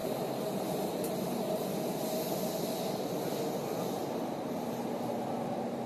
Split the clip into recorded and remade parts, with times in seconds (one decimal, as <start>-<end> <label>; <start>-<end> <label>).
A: 0.0-1.8 remade; 1.8-4.0 recorded; 4.0-4.6 remade; 4.6-5.9 recorded